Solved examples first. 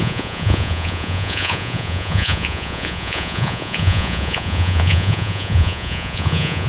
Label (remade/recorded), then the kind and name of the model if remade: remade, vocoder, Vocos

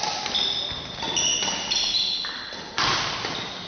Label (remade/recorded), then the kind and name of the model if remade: recorded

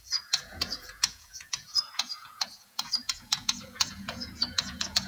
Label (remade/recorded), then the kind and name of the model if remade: remade, vocoder, Vocos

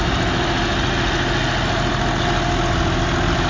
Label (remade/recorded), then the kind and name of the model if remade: recorded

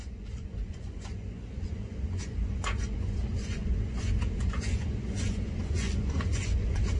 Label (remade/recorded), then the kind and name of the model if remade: remade, vocoder, Vocos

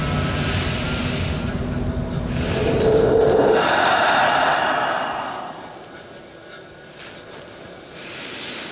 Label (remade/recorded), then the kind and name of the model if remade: recorded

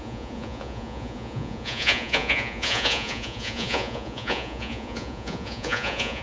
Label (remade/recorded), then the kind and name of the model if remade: remade, vocoder, Vocos